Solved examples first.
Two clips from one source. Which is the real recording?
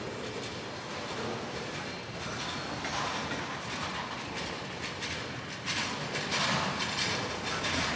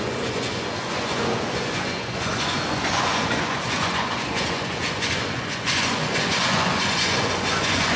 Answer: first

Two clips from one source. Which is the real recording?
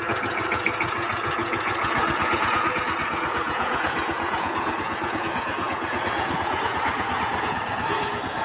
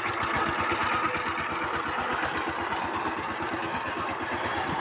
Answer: second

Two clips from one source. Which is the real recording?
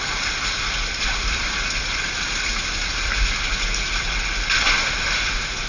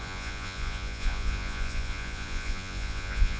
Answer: first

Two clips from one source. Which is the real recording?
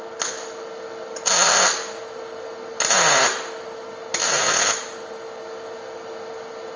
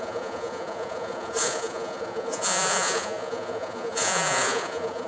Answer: first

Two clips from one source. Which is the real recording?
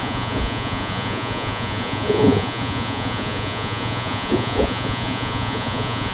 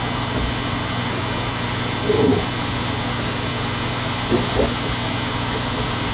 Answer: second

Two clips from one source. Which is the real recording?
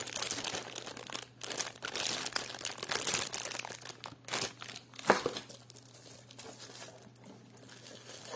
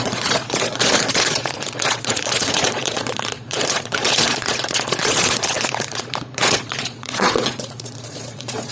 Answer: first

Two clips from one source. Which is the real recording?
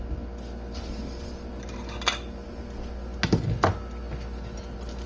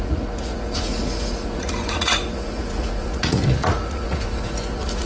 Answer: first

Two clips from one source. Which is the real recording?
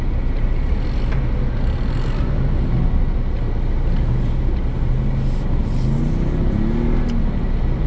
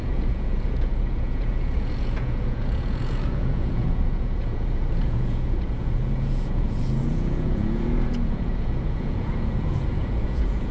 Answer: first